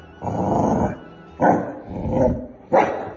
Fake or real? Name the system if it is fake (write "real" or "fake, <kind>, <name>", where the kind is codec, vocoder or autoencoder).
real